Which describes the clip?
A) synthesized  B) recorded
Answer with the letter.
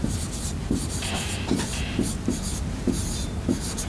A